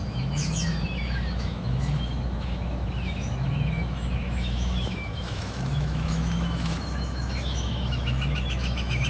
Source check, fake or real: fake